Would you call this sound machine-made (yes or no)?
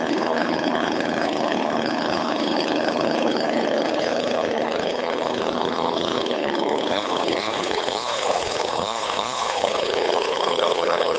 yes